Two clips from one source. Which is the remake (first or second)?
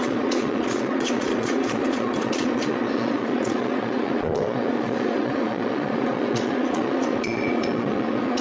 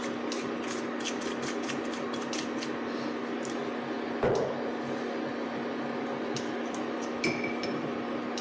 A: first